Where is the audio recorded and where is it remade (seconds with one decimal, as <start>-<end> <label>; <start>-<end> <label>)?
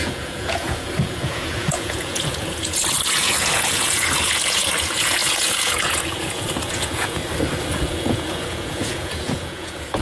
0.0-7.2 remade; 7.2-7.7 recorded; 7.7-10.0 remade